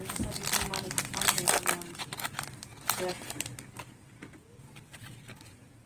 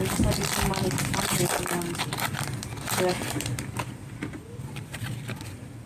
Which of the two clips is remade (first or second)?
second